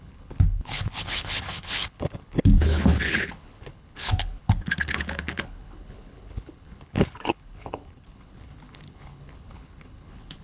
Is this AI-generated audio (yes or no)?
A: yes